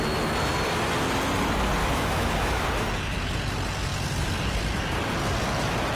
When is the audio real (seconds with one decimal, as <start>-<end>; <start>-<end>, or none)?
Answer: 0.0-1.8; 2.6-6.0